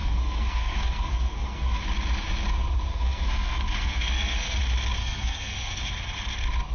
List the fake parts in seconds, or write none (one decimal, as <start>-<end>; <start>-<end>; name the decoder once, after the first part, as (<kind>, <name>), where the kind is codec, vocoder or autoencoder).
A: 0.0-1.8 (codec, SNAC); 2.9-4.6; 5.0-5.8

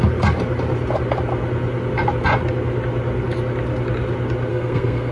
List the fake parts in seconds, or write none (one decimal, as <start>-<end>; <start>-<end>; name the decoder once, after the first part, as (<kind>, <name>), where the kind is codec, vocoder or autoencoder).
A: 4.5-5.1 (codec, SNAC)

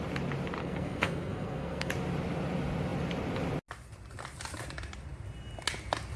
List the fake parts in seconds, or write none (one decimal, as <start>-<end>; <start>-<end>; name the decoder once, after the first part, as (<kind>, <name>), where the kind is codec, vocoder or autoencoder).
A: 0.6-1.9 (codec, SNAC)

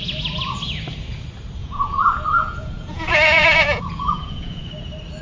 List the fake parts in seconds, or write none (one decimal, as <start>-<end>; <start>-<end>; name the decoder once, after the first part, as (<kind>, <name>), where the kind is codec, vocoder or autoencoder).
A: 1.6-4.7 (vocoder, Vocos)